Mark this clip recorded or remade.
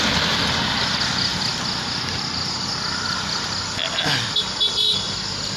recorded